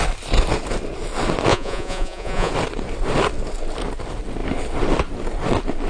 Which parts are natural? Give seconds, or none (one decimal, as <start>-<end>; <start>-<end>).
0.0-1.5; 2.5-5.9